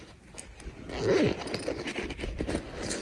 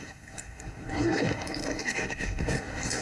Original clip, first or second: first